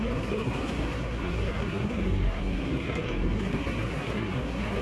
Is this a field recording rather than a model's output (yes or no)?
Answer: no